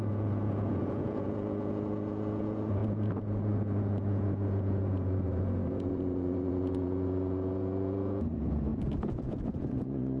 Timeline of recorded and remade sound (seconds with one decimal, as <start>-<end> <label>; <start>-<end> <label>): 0.0-10.2 remade